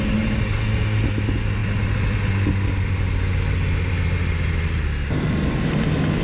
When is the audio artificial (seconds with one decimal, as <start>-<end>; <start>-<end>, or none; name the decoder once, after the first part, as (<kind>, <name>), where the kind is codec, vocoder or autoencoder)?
none